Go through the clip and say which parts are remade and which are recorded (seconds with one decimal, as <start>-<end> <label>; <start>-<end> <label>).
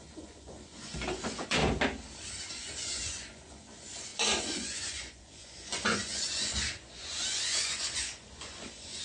0.0-1.6 remade; 1.6-2.5 recorded; 2.5-9.0 remade